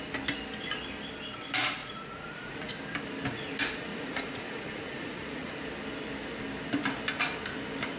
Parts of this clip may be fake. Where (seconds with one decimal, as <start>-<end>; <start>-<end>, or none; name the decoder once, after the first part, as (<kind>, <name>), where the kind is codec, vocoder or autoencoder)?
1.8-2.7 (vocoder, Vocos); 3.9-5.5